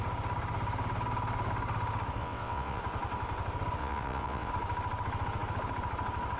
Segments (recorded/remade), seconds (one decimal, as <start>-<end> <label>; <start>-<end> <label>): 0.0-2.2 recorded; 2.2-2.8 remade; 2.8-3.8 recorded; 3.8-4.5 remade; 4.5-6.4 recorded